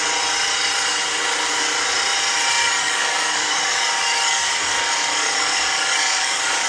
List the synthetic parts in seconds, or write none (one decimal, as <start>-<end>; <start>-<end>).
2.6-6.7